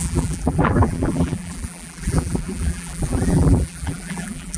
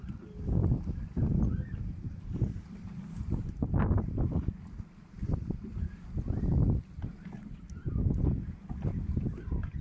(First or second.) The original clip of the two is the second